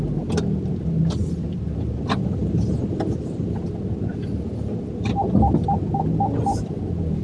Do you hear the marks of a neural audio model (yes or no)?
no